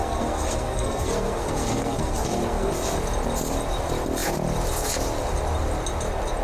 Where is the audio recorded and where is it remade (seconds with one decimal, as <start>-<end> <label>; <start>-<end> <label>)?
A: 0.0-2.7 remade; 2.7-6.4 recorded